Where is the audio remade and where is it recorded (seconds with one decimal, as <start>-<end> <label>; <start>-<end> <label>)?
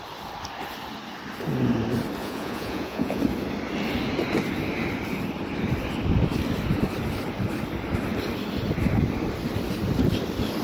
0.0-2.2 recorded; 2.2-3.2 remade; 3.2-10.6 recorded